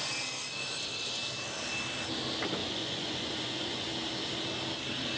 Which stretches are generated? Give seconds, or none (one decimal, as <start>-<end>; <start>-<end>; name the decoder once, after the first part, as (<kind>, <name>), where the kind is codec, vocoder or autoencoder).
2.6-3.9 (vocoder, Vocos)